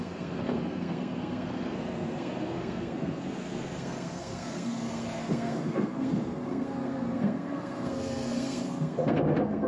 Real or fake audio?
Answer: fake